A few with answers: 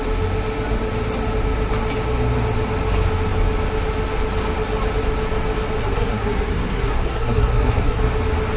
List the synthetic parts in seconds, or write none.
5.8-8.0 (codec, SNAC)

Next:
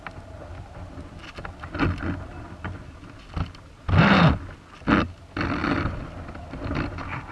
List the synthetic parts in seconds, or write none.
none